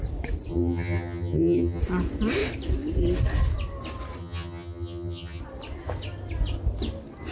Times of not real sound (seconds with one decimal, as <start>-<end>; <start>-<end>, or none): 0.5-1.8; 4.2-5.4